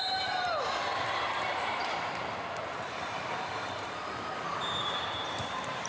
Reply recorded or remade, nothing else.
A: recorded